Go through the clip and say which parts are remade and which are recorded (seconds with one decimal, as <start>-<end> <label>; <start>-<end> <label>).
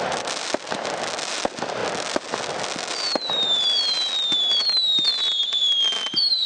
0.0-6.5 recorded